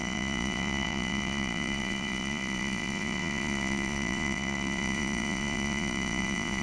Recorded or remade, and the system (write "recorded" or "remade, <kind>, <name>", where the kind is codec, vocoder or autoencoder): remade, vocoder, Vocos